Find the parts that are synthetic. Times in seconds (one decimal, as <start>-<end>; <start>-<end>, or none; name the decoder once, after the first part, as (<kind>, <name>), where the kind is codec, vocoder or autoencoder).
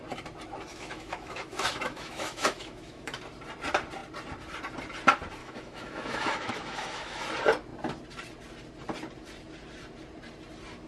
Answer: 0.7-3.2 (autoencoder, DAC-VAE); 5.4-7.2